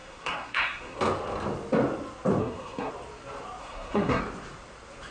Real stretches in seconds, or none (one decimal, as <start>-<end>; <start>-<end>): 1.0-2.4; 2.9-3.6; 4.2-5.1